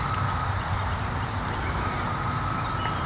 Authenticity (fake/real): fake